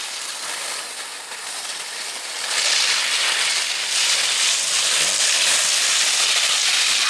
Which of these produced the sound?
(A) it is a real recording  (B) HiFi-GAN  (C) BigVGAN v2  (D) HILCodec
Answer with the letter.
A